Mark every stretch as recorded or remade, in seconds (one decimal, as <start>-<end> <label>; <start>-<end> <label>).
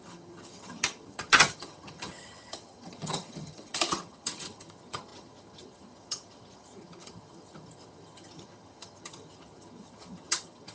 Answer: 0.0-10.7 remade